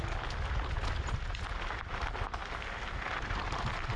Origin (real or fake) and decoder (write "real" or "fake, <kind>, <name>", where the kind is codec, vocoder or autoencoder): real